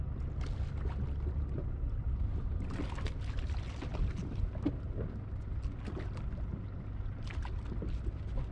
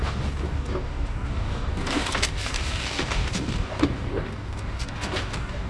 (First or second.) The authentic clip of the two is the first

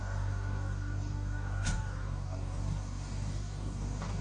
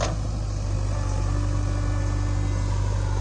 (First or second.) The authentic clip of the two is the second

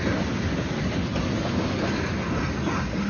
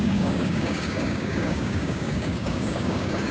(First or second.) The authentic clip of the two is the first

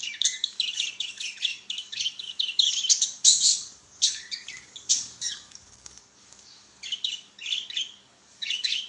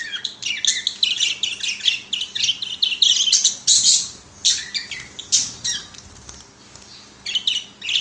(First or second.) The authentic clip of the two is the second